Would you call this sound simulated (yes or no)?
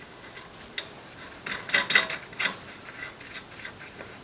no